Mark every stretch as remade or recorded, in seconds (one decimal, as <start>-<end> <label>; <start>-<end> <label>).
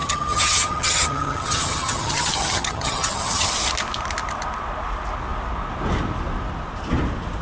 0.0-3.5 remade; 3.5-7.4 recorded